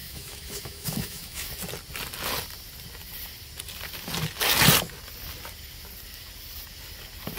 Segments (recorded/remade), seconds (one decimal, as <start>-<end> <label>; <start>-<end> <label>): 0.0-1.5 remade; 1.5-7.4 recorded